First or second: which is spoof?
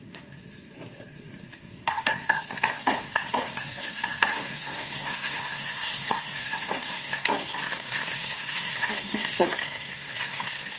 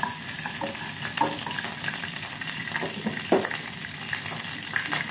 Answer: first